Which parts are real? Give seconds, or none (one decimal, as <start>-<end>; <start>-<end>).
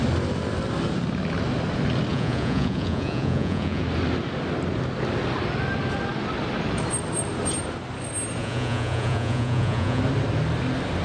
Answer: 0.0-2.1; 3.8-8.4; 10.0-11.0